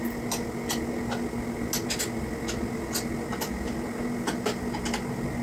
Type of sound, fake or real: real